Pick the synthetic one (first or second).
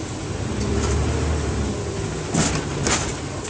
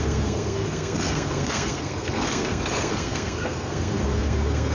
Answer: second